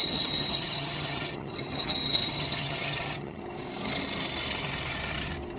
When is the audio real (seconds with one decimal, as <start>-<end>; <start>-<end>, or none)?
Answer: 3.4-5.6